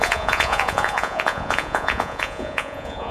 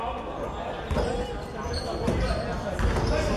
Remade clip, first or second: first